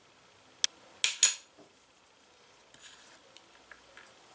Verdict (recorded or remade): recorded